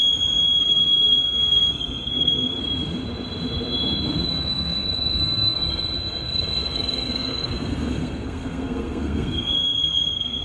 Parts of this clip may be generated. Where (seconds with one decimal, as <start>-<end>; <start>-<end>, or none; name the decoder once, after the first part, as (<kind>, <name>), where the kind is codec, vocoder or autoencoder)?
0.6-2.6 (codec, SNAC); 4.3-10.4